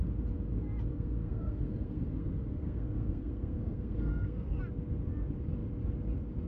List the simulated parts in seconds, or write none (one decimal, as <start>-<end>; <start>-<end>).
0.9-4.6